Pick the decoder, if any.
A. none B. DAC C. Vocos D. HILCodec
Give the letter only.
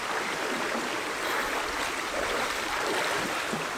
A